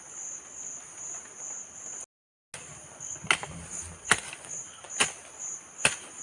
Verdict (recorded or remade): recorded